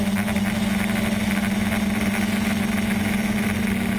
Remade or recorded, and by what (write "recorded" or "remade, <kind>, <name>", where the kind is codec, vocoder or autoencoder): recorded